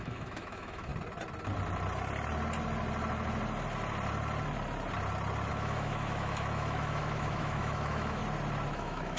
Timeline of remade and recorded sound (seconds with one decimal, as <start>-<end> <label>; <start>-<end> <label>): 0.0-0.9 remade; 0.9-5.5 recorded; 5.5-8.2 remade; 8.2-8.7 recorded; 8.7-9.2 remade